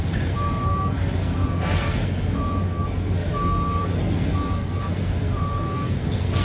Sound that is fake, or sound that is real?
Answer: fake